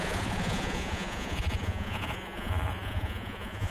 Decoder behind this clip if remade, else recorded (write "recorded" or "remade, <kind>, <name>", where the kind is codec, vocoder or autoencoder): remade, vocoder, Vocos